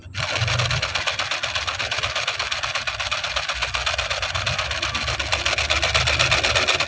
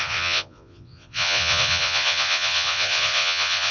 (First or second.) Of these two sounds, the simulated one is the second